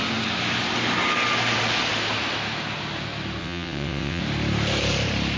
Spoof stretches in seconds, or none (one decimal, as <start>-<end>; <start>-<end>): 3.4-4.2